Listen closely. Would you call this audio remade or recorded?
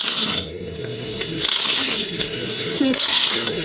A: remade